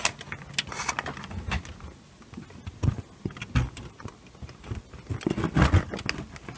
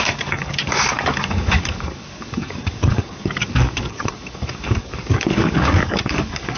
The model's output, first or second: second